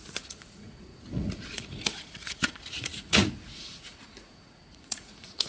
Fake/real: fake